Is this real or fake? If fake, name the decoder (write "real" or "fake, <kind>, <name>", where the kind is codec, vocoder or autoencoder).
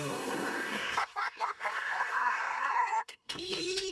fake, codec, SNAC